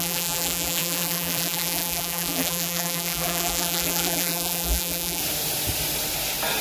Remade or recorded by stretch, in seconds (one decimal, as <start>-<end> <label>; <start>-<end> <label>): 0.0-5.2 remade; 5.2-6.6 recorded